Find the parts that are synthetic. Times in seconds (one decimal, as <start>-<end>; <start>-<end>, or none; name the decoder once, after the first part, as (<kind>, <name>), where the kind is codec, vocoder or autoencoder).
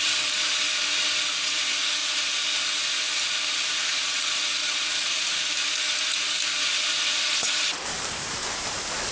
0.0-0.5 (vocoder, BigVGAN v2); 1.3-9.1